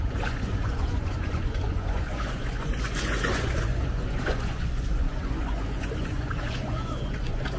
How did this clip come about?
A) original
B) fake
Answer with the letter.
B